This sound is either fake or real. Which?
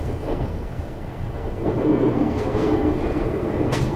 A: fake